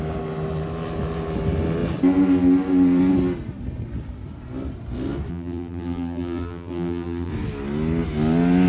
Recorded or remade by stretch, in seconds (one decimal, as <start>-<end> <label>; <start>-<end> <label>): 0.0-5.3 recorded; 5.3-7.3 remade; 7.3-8.7 recorded